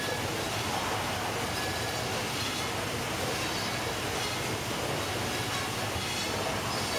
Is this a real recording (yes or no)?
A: yes